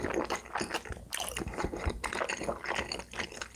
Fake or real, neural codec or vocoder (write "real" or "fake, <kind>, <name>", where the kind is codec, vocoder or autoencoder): real